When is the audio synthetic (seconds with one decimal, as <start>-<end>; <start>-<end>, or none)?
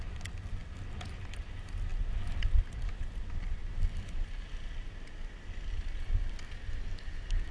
1.9-3.0